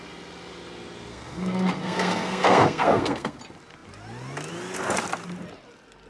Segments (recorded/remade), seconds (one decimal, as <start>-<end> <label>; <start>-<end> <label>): 0.0-1.1 recorded; 1.1-3.4 remade; 3.4-6.1 recorded